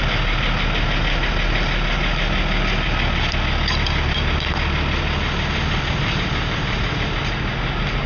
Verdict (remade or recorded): recorded